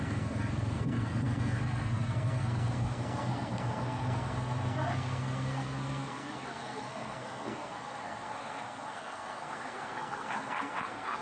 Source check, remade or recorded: remade